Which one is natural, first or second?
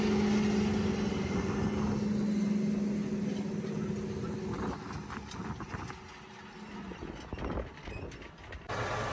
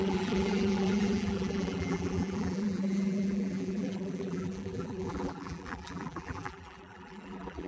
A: first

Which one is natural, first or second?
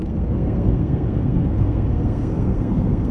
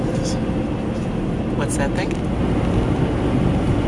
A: second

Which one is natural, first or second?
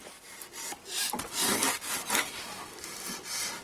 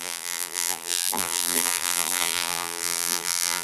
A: first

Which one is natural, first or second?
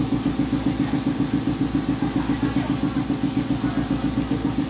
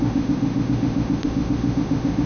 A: first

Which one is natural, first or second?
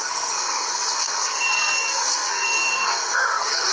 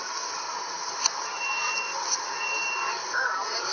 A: second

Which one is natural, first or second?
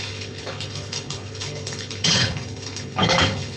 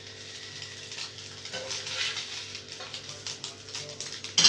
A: second